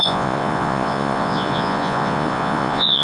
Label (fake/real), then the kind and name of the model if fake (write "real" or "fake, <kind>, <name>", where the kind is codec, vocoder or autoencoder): fake, vocoder, Vocos